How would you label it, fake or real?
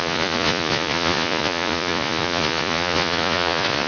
fake